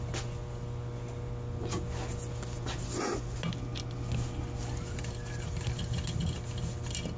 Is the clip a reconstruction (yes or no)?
no